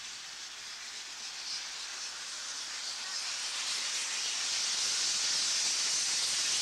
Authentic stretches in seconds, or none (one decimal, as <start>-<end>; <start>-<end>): 0.0-6.6